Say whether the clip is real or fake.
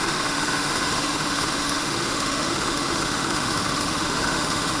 fake